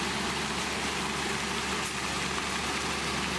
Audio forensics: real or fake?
real